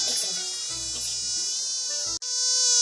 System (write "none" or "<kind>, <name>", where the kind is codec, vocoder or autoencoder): none